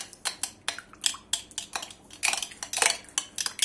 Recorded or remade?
recorded